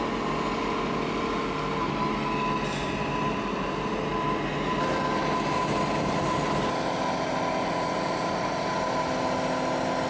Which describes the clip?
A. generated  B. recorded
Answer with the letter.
B